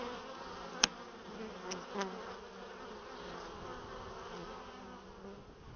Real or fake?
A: real